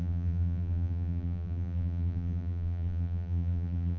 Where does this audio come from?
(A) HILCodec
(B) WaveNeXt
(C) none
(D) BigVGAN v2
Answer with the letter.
D